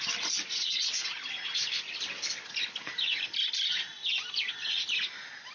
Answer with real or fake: real